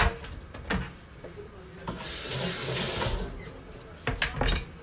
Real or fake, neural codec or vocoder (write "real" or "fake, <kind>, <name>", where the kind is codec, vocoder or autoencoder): real